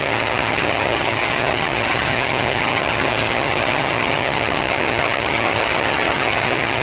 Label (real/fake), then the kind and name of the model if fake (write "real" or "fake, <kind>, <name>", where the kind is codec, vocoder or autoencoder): fake, vocoder, HiFi-GAN